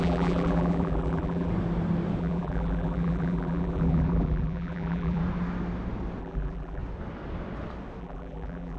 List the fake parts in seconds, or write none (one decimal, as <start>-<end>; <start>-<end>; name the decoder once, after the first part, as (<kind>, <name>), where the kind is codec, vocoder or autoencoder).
0.0-1.5 (vocoder, BigVGAN v2); 2.2-5.2; 6.2-6.8; 8.0-8.8